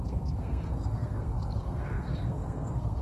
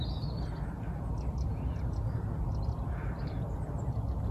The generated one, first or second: first